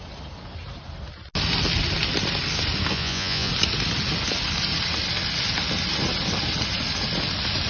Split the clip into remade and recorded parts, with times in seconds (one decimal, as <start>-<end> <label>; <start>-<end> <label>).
0.0-2.9 recorded; 2.9-3.5 remade; 3.5-7.7 recorded